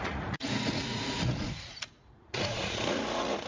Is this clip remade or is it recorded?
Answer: remade